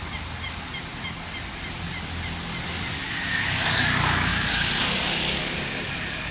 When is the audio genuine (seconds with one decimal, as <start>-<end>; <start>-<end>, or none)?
0.0-2.9

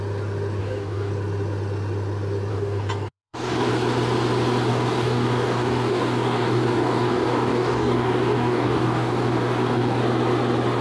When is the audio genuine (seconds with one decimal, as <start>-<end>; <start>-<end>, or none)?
0.0-0.6; 1.1-2.5; 3.7-4.7; 10.0-10.8

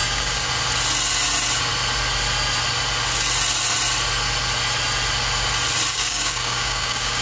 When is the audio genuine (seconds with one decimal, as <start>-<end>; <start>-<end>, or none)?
0.5-5.9

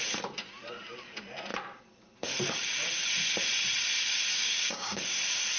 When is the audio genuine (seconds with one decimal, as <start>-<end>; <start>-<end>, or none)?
0.0-4.3; 5.0-5.6

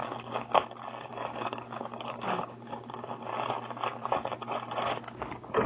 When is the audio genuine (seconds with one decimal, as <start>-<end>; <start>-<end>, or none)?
0.6-1.1; 3.3-4.9

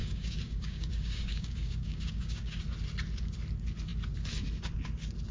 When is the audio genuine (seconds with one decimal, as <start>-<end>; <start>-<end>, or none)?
2.6-5.3

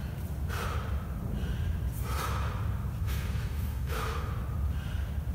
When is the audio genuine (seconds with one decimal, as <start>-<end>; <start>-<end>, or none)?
0.0-3.0; 4.3-5.3

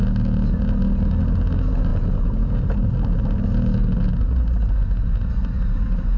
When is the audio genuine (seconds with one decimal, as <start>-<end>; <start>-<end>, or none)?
0.0-6.2